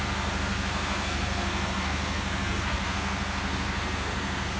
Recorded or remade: remade